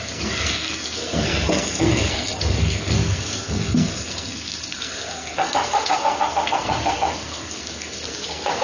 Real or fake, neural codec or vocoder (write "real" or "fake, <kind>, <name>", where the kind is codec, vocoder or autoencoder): fake, codec, SNAC